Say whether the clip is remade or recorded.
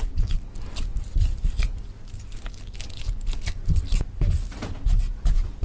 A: recorded